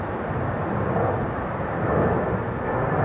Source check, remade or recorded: recorded